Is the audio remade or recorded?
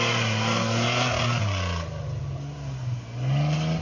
recorded